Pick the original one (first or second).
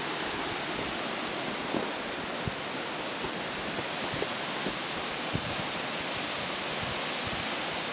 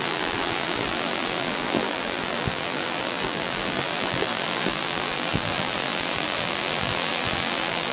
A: first